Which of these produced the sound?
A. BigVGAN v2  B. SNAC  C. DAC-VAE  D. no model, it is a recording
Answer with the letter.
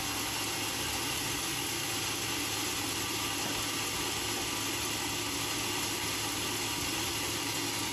D